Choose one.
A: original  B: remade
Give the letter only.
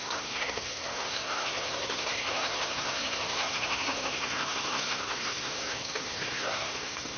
B